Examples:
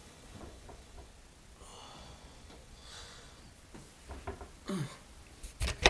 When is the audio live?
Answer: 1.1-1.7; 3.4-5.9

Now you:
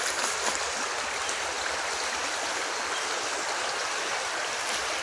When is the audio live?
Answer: 0.0-5.0

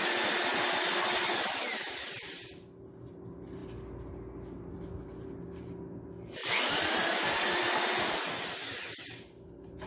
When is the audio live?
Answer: 0.0-9.9

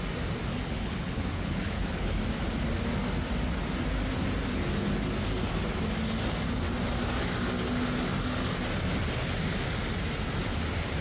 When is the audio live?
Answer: 0.0-0.5; 2.2-11.0

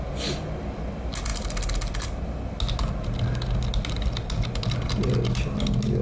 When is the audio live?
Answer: 0.0-6.0